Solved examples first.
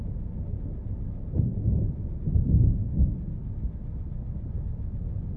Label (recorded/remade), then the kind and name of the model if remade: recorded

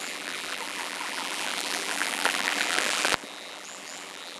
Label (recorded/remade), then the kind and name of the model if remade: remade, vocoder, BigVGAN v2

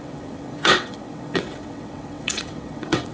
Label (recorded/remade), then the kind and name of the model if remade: remade, vocoder, WaveNeXt